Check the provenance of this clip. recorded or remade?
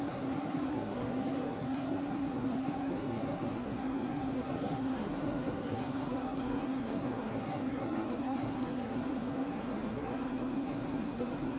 remade